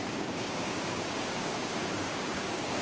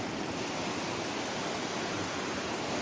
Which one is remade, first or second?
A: first